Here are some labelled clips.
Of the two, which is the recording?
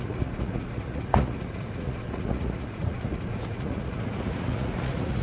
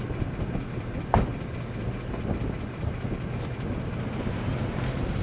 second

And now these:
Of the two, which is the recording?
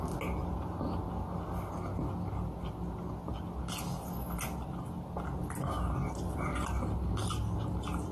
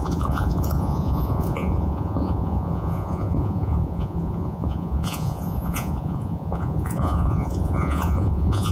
first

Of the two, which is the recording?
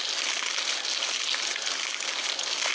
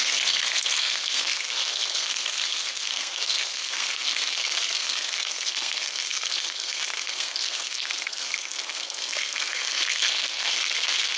first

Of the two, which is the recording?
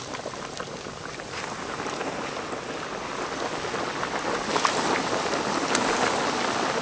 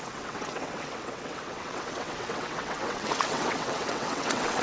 first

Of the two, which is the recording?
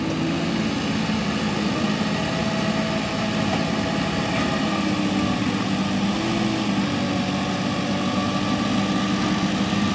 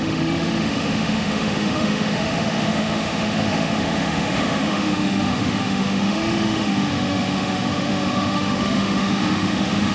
first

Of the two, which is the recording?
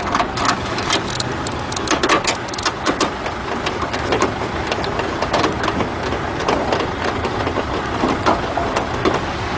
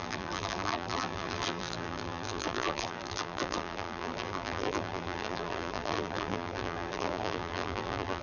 first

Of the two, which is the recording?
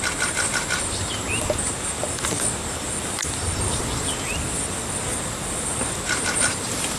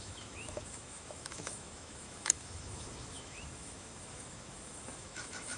first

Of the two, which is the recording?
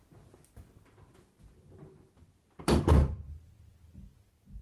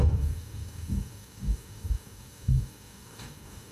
first